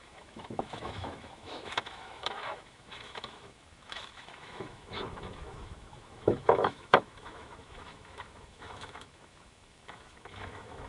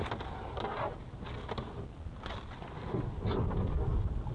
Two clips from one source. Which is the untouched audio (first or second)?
second